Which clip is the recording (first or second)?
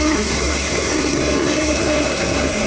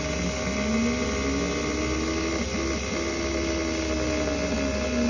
second